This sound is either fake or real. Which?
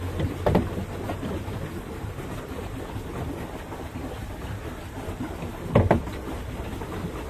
real